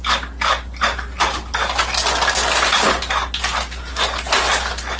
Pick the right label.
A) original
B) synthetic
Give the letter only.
A